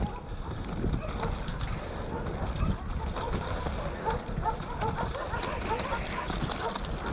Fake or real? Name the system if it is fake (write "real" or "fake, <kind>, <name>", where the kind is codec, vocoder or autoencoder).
real